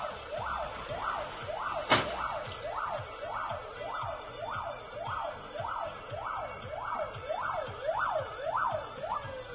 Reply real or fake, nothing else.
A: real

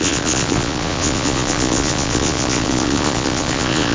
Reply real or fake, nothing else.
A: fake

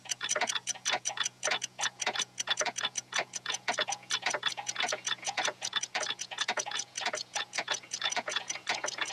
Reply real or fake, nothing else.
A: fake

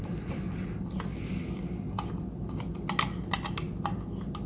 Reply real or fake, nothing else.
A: real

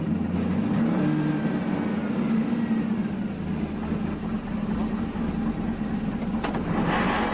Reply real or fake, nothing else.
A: real